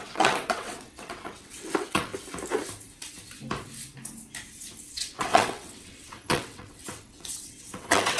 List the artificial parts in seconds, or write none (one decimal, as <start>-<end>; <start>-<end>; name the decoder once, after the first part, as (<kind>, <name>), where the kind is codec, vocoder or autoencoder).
0.0-2.1 (vocoder, WaveNeXt); 4.9-8.2

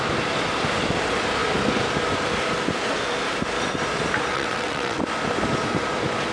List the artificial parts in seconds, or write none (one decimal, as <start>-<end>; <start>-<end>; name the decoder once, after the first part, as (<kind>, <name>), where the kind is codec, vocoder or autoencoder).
4.3-5.0 (vocoder, WaveNeXt)

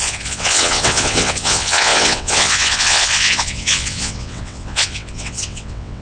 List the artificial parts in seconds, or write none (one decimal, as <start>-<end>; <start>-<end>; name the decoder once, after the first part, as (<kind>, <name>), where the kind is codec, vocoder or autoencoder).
0.0-6.0 (vocoder, WaveNeXt)

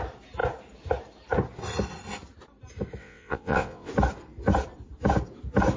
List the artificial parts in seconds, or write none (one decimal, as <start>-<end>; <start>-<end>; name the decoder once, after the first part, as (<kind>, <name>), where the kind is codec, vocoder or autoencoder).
3.0-3.9 (vocoder, WaveNeXt)

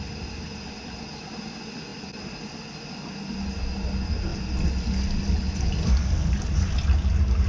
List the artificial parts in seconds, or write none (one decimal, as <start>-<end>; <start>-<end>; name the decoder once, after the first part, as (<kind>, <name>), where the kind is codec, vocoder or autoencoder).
none